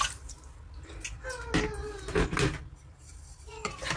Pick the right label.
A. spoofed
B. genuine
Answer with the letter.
B